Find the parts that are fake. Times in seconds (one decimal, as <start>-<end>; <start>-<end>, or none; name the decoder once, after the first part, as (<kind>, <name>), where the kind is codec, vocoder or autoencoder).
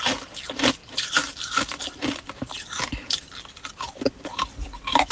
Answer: none